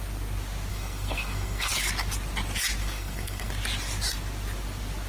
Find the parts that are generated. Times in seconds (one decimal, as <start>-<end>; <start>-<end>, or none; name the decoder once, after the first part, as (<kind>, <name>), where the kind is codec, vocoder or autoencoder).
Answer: 0.7-1.7 (codec, SNAC); 2.8-3.5